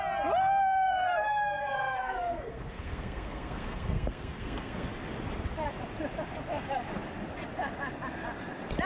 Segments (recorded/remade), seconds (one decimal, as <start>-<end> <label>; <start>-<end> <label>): 0.0-0.6 recorded; 0.6-4.9 remade; 4.9-8.9 recorded